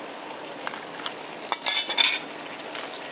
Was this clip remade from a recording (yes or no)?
no